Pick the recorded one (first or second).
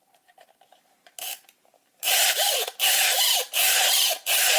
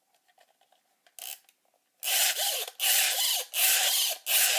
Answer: second